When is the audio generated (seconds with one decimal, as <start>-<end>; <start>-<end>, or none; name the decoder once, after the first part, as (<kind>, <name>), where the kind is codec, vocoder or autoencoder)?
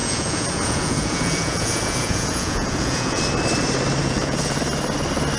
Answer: 0.0-3.2 (vocoder, Vocos); 4.0-4.6